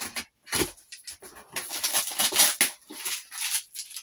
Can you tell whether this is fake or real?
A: real